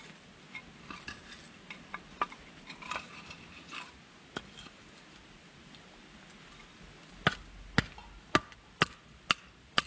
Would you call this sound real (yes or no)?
yes